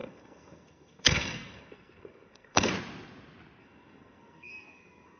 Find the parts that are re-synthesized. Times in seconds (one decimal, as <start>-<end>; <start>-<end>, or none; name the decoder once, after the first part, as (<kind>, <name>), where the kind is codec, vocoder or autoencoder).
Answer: 0.0-2.7 (codec, SNAC); 3.6-5.2

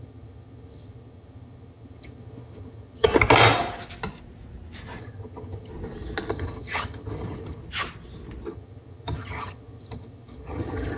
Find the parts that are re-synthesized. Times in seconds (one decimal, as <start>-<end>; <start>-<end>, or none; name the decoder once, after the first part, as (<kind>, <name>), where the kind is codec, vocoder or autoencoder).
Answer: 0.0-3.1 (vocoder, HiFi-GAN); 5.0-5.7; 6.3-7.6; 8.5-11.0

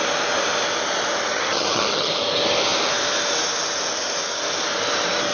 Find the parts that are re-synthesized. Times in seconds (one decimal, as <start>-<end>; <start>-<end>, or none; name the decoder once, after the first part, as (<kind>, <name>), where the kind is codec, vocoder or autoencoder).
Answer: 1.3-2.1 (vocoder, HiFi-GAN)

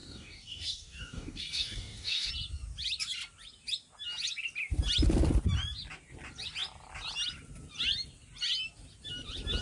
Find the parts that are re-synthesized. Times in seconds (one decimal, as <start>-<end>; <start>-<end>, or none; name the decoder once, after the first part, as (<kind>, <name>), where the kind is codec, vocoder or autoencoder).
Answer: 0.0-2.3 (codec, DAC)

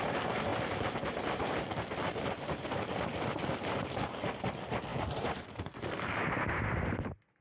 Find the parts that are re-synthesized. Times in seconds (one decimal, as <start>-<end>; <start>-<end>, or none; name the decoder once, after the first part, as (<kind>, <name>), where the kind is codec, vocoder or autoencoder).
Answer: 0.5-4.4 (vocoder, BigVGAN v2); 4.9-6.1